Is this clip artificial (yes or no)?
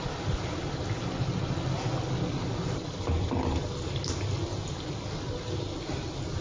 no